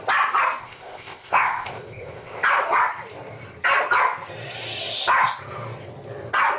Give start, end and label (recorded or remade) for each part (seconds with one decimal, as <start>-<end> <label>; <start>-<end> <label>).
0.0-0.6 recorded; 0.6-2.4 remade; 2.4-6.6 recorded